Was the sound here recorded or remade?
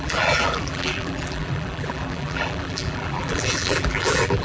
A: remade